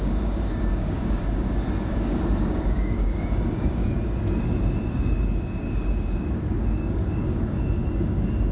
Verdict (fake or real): fake